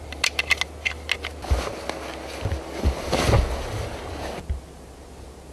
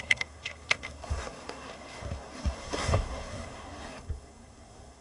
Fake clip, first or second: second